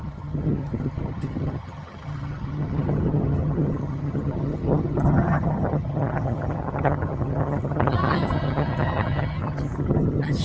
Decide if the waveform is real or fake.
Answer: fake